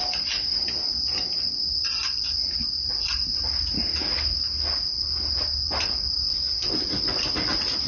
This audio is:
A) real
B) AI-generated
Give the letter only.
A